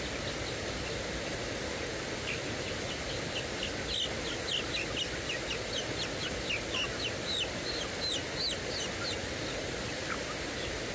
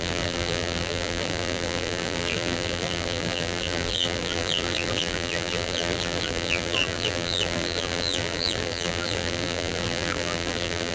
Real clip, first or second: first